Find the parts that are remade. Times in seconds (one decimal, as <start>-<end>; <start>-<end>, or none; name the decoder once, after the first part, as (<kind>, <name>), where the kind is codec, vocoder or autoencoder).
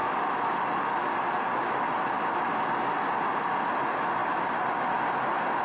none